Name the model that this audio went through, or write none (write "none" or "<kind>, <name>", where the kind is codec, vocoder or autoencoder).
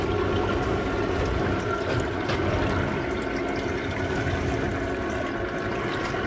none